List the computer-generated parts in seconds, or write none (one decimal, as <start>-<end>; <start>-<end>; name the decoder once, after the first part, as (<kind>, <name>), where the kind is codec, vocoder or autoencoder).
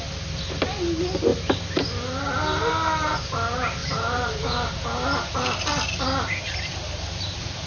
none